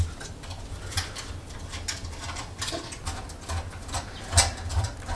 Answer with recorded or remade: recorded